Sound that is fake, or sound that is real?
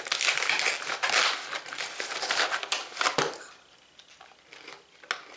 real